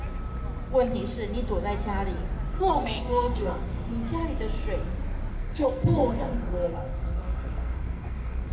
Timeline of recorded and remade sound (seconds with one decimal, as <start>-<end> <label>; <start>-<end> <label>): 0.0-2.5 recorded; 2.5-3.9 remade; 3.9-5.3 recorded; 5.3-8.5 remade